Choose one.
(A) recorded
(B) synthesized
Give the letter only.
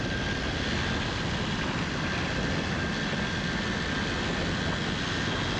A